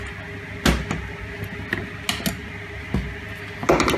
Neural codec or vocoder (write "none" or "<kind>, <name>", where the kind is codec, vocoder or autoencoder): none